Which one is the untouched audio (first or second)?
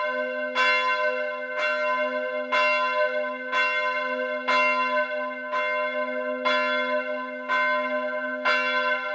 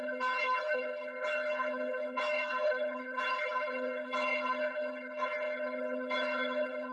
first